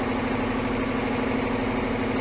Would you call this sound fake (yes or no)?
no